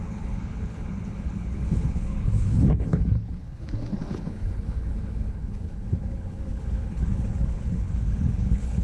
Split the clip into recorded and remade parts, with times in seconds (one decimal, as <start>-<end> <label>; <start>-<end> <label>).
0.0-8.8 remade